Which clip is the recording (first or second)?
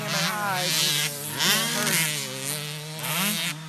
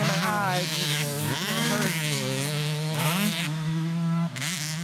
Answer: first